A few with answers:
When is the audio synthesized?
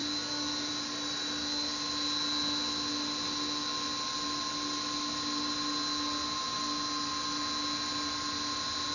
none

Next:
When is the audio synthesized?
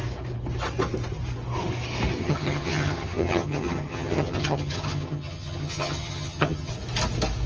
2.2-6.7 (vocoder, HiFi-GAN)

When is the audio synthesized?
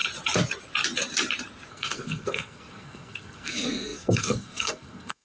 1.7-5.2 (codec, SNAC)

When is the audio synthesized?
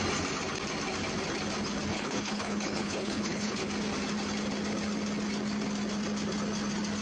1.9-3.7 (codec, HILCodec)